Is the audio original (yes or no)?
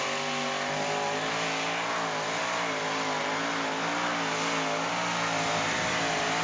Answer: yes